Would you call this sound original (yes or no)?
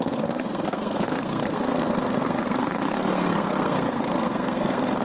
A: no